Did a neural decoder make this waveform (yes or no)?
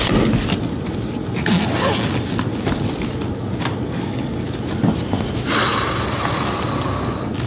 no